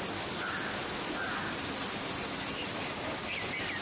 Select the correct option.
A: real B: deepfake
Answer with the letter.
A